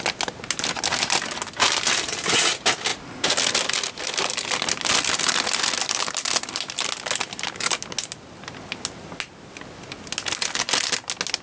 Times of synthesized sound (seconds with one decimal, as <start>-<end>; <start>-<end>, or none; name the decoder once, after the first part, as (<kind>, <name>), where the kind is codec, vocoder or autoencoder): none